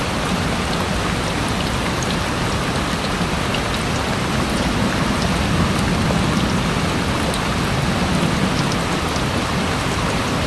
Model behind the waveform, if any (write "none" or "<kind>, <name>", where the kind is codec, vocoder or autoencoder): none